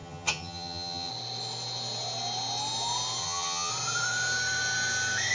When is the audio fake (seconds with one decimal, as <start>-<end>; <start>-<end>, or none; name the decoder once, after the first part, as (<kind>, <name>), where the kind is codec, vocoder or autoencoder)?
0.0-1.1 (vocoder, HiFi-GAN); 3.2-3.7